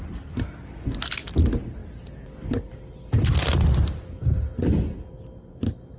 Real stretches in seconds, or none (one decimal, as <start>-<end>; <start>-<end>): 0.0-6.0